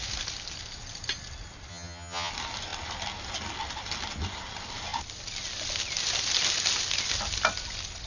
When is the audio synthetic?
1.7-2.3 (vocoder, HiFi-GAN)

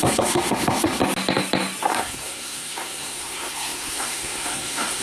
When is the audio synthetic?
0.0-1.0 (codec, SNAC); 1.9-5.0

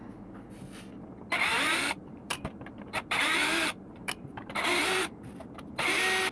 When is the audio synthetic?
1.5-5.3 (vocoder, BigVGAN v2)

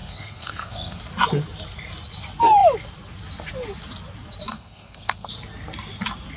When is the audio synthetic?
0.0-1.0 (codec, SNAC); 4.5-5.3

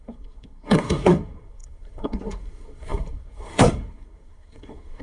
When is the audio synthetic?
0.0-5.0 (codec, SNAC)

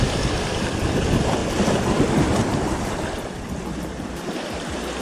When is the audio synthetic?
0.0-1.4 (vocoder, BigVGAN v2); 3.4-5.0